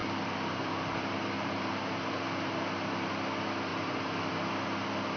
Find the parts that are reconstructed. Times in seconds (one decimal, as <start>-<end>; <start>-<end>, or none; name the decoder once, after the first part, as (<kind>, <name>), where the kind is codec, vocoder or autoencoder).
0.0-3.1 (vocoder, BigVGAN v2); 3.7-4.3